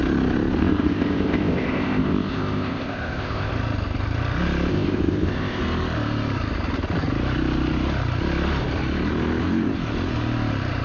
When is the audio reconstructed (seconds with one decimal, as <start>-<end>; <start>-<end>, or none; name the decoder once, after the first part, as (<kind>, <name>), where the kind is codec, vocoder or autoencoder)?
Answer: 0.6-3.5 (codec, ZipCodec); 4.7-5.6